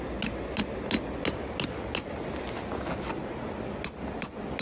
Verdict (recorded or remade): recorded